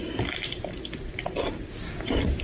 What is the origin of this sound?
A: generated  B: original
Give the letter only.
B